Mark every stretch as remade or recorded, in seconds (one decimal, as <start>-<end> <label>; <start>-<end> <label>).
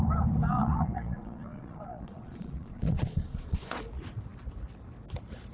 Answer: 0.0-0.5 recorded; 0.5-3.8 remade; 3.8-5.5 recorded